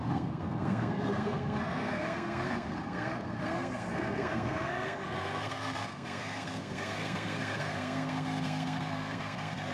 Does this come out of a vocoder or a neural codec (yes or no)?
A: yes